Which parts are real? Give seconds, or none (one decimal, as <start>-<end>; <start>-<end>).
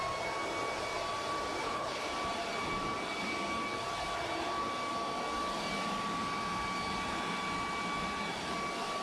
0.0-1.6; 2.1-9.0